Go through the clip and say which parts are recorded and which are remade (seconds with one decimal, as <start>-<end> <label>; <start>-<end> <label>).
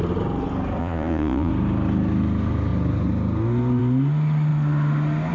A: 0.0-0.8 recorded; 0.8-1.5 remade; 1.5-5.3 recorded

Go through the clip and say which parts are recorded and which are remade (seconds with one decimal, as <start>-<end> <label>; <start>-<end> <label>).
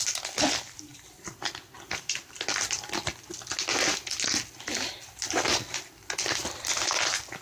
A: 0.0-7.4 recorded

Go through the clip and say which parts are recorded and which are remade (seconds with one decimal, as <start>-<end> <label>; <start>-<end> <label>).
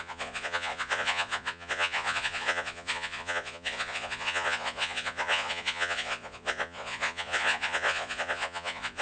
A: 0.0-9.0 remade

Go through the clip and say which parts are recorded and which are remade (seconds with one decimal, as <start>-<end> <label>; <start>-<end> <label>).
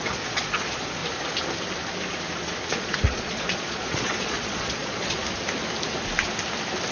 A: 0.0-1.0 remade; 1.0-2.7 recorded; 2.7-5.2 remade; 5.2-6.9 recorded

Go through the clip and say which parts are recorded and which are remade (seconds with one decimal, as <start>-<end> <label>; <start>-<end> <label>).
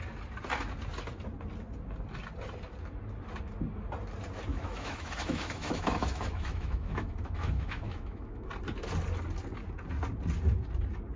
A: 0.0-4.5 recorded; 4.5-8.5 remade; 8.5-11.2 recorded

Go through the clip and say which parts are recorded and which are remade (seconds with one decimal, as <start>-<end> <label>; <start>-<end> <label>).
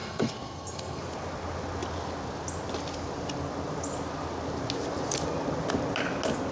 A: 0.0-1.0 remade; 1.0-6.5 recorded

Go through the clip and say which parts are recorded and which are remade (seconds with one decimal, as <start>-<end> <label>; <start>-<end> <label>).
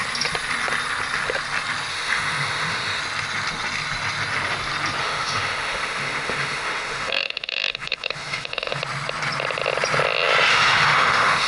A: 0.0-1.9 recorded; 1.9-3.0 remade; 3.0-5.0 recorded; 5.0-8.8 remade; 8.8-10.5 recorded; 10.5-11.5 remade